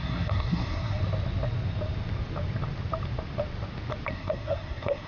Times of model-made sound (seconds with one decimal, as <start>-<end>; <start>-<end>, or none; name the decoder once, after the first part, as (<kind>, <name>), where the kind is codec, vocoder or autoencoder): 0.0-1.0 (codec, SNAC); 4.1-5.1

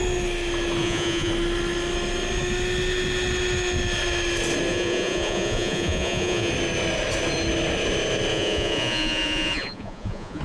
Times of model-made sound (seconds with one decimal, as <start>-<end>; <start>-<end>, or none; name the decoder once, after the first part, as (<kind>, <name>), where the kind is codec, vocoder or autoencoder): 0.8-1.3 (vocoder, Vocos); 4.7-6.5; 8.3-10.4

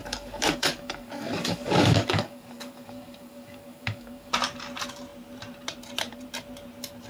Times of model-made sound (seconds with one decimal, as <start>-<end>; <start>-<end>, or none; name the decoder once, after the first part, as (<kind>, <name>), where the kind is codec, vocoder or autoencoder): 0.0-4.3 (codec, DAC)